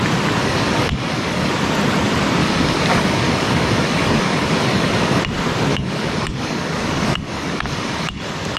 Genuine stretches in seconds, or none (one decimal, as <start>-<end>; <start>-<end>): 0.0-0.4; 1.5-2.4; 5.2-5.7; 8.2-8.6